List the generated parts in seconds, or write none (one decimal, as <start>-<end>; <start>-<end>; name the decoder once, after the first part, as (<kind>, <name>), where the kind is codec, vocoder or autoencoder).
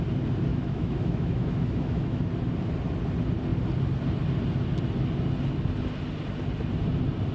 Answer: 0.5-2.2 (autoencoder, DAC-VAE)